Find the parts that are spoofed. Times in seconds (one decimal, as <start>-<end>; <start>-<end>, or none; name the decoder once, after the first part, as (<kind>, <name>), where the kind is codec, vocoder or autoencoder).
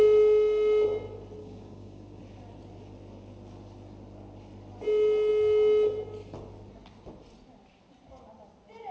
1.4-2.2 (codec, DAC)